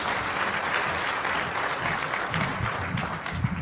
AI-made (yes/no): no